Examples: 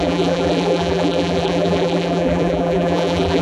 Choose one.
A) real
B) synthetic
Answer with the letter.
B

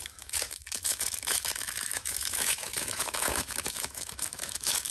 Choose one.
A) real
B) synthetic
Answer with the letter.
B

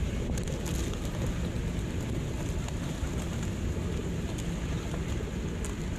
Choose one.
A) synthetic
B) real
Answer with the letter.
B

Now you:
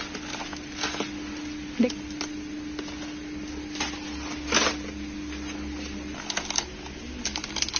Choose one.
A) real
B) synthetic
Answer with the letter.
A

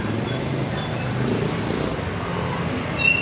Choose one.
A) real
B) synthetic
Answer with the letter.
A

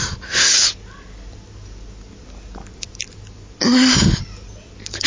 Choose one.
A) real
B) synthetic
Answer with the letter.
A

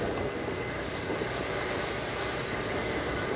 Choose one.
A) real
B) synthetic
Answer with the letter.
A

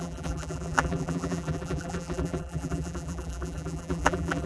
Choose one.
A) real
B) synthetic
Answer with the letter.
B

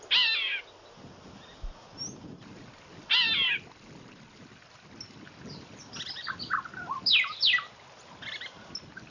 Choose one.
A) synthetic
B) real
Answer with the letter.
B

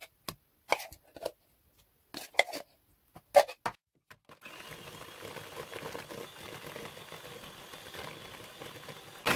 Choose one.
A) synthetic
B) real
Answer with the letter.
B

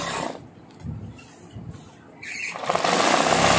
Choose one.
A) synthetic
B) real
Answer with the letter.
B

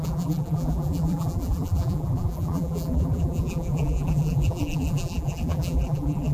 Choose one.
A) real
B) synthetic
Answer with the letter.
B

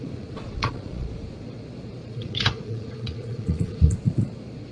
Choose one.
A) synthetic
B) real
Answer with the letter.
A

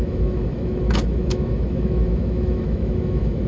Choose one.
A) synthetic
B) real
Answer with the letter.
A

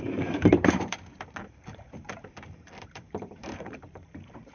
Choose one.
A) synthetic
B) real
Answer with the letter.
A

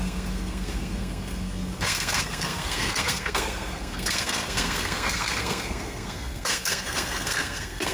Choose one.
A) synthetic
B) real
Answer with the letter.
A